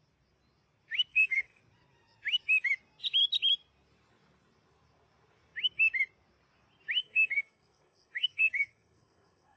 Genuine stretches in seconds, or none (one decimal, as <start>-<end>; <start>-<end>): 0.0-1.1; 1.6-7.0